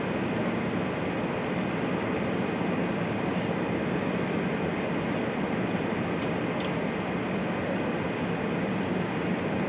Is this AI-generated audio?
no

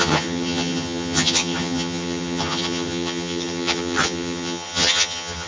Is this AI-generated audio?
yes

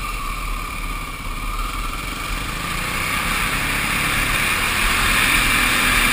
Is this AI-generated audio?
no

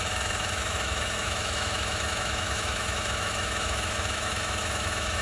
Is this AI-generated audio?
yes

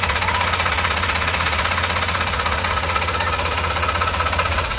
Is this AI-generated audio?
yes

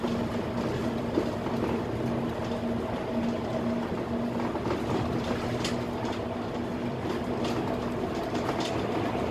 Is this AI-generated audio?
no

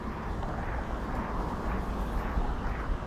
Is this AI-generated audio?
no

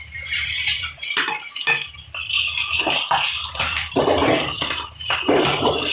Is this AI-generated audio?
yes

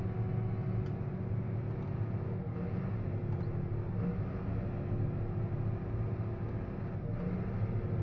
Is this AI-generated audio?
no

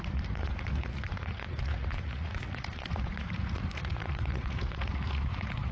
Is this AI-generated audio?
yes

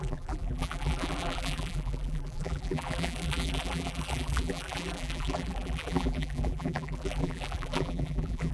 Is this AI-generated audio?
yes